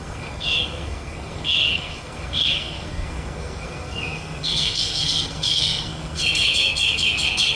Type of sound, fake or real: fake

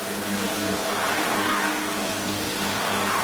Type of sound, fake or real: fake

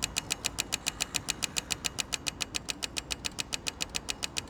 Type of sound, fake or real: real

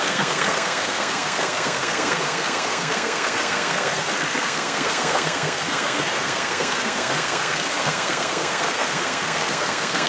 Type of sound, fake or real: fake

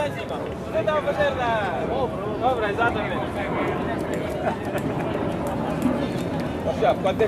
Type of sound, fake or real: fake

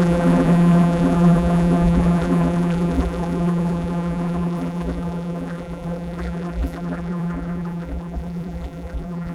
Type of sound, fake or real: fake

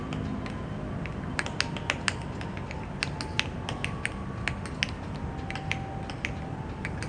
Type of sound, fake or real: real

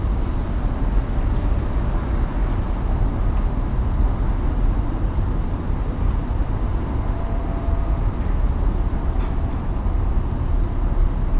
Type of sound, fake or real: real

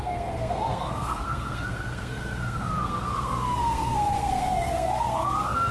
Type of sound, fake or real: fake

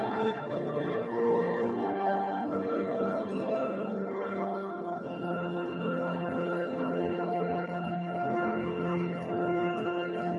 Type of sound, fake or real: fake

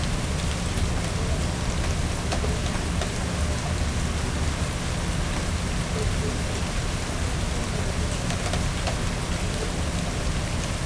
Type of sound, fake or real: real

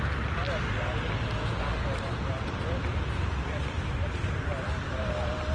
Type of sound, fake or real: real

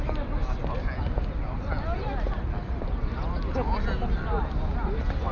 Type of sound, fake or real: real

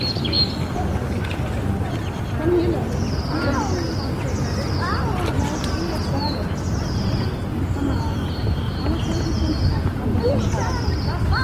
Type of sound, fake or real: real